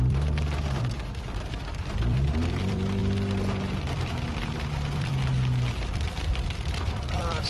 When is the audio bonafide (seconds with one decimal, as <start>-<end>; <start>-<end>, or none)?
3.0-3.8; 5.1-6.1